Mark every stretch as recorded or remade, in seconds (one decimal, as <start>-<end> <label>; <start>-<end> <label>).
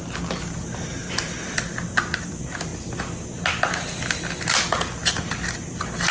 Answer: 0.0-2.7 remade; 2.7-5.3 recorded; 5.3-6.1 remade